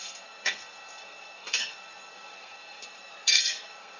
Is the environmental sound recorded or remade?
remade